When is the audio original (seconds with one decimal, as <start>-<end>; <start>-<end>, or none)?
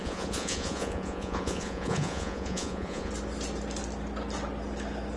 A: 3.1-5.2